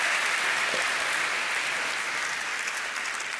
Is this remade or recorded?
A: remade